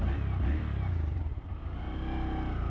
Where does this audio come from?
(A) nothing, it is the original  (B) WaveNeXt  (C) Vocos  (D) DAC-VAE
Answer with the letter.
A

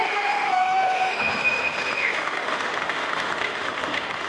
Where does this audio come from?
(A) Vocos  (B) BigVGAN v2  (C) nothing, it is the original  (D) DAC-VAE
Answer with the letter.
D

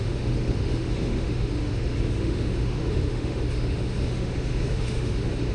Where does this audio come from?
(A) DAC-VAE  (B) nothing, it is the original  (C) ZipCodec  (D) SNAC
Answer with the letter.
A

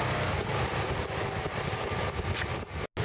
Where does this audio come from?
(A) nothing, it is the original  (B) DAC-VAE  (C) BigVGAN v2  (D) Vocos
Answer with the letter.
A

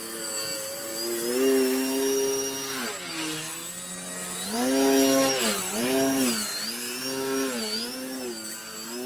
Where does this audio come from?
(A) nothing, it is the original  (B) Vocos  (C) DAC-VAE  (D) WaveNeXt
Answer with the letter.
A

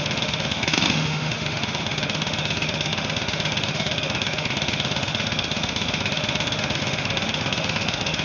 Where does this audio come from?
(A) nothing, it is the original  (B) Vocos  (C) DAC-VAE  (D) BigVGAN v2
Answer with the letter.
C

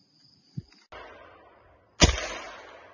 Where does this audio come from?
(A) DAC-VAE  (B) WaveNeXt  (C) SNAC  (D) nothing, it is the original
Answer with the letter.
D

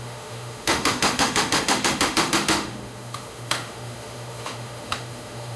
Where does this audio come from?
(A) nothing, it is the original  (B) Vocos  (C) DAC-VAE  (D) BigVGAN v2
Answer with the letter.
C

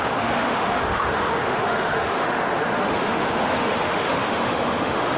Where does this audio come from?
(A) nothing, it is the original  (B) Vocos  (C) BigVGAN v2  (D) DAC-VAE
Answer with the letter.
D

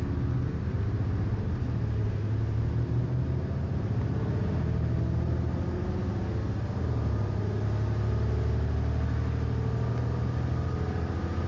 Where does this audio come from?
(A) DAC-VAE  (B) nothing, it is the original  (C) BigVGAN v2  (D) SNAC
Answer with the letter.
B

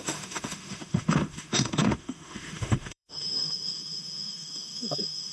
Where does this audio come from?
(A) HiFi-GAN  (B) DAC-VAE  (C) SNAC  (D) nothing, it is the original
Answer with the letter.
B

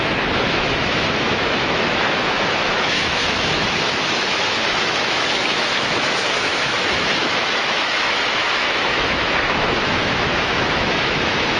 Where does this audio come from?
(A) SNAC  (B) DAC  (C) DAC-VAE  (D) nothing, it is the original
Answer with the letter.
C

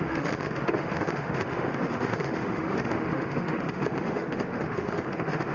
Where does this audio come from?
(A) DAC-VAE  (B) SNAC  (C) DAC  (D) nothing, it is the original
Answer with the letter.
A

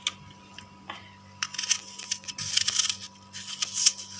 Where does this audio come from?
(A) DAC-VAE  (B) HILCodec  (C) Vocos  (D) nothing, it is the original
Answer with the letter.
D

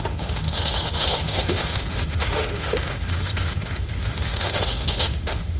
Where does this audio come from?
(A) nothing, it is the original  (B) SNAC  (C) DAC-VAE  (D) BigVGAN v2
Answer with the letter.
C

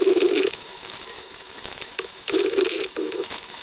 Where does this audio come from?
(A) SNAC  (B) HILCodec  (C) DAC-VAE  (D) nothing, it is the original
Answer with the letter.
C